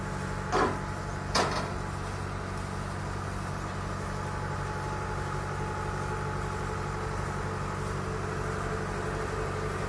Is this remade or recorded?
recorded